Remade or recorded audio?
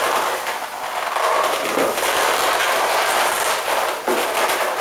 recorded